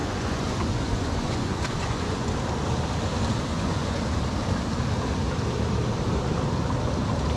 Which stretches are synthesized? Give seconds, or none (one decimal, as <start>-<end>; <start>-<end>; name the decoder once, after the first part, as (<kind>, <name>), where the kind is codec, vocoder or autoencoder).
0.0-2.3 (vocoder, Vocos); 3.5-4.0